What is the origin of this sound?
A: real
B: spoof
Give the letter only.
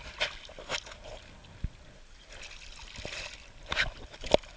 A